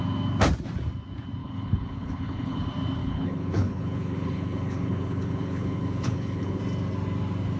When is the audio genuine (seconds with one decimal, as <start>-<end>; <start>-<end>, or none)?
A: 0.0-1.4; 2.6-3.0; 6.6-7.6